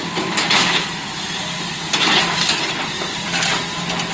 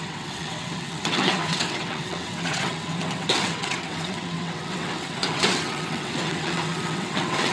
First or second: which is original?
first